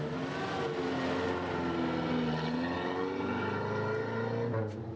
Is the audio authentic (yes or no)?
yes